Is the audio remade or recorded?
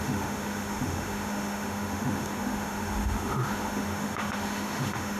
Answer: remade